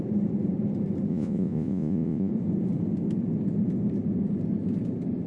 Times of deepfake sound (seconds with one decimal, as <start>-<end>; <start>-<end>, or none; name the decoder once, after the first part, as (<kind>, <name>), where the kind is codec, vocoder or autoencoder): 1.1-2.3 (vocoder, Vocos)